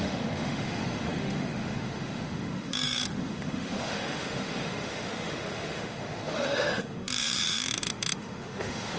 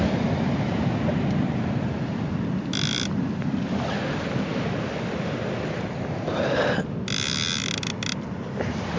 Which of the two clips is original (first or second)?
second